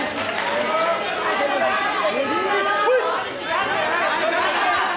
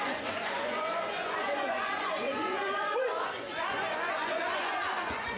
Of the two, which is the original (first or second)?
first